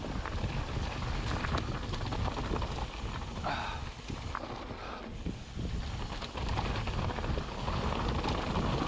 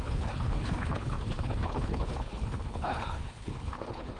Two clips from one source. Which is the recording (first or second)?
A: first